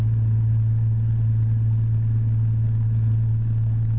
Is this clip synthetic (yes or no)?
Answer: no